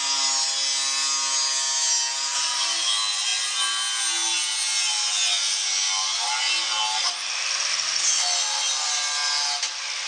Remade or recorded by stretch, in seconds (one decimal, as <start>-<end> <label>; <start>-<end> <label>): 0.0-10.1 recorded